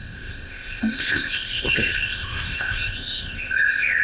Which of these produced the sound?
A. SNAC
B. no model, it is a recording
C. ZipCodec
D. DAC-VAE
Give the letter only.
C